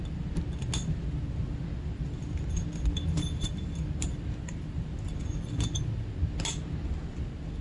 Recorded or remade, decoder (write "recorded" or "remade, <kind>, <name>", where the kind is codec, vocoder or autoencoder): recorded